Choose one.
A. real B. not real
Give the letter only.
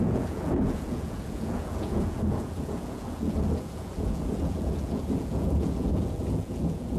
B